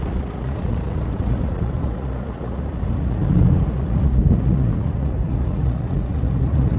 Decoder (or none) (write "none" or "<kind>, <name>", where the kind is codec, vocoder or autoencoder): vocoder, Vocos